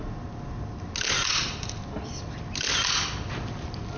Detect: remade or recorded recorded